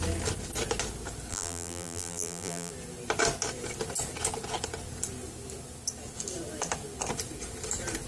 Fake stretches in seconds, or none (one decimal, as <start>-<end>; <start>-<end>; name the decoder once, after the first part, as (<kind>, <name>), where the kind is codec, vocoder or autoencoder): 1.3-2.7 (vocoder, BigVGAN v2)